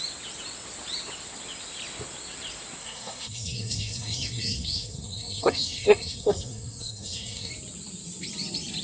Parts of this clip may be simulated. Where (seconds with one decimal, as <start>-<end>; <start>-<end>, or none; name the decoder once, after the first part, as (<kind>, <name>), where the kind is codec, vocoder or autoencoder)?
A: 2.8-7.5 (codec, SNAC)